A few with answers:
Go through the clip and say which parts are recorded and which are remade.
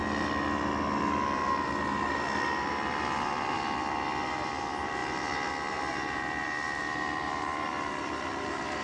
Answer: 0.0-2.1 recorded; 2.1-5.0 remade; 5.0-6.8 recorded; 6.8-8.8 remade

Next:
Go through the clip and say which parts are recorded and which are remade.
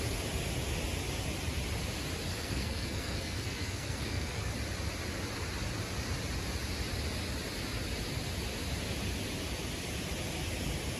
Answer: 0.0-2.3 recorded; 2.3-4.5 remade; 4.5-11.0 recorded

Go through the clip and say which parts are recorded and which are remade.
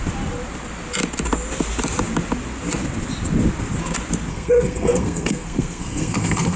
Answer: 0.0-4.3 recorded; 4.3-6.6 remade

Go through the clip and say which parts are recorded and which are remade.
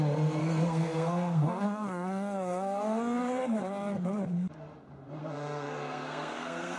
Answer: 0.0-0.4 recorded; 0.4-4.5 remade; 4.5-5.2 recorded; 5.2-6.8 remade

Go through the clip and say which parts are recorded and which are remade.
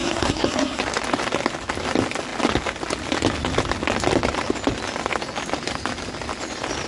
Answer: 0.0-0.8 remade; 0.8-6.9 recorded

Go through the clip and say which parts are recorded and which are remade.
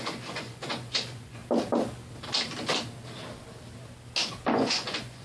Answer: 0.0-1.4 remade; 1.4-4.5 recorded; 4.5-5.2 remade